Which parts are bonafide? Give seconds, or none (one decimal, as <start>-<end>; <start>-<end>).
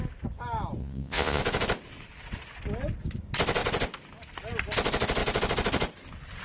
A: 0.0-0.8; 1.4-6.4